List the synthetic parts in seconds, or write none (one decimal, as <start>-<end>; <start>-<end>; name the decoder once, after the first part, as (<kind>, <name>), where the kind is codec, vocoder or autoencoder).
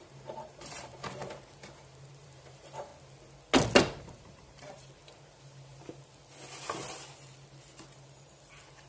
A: 0.0-1.2 (vocoder, BigVGAN v2); 2.1-2.9; 4.0-5.0